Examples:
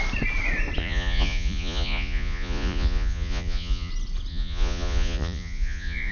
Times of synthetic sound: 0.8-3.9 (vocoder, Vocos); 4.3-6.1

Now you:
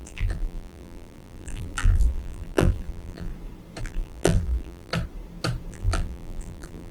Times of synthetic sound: 0.0-3.3 (vocoder, BigVGAN v2); 3.8-4.9; 5.7-6.9

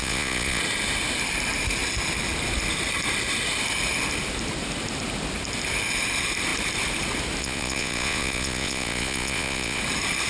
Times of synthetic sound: 0.0-0.6 (vocoder, Vocos); 7.4-9.8

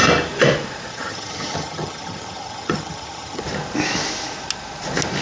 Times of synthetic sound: 0.9-3.4 (vocoder, HiFi-GAN)

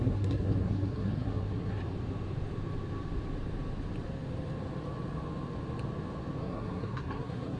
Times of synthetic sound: 0.0-1.8 (codec, SNAC); 6.4-7.6

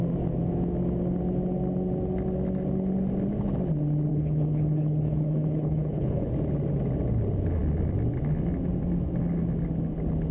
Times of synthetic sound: 4.1-6.3 (codec, HILCodec)

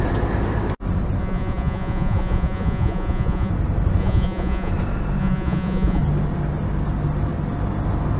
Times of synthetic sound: 1.2-3.5 (vocoder, Vocos); 4.0-4.7; 5.2-6.0

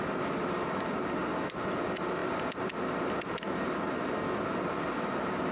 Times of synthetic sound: none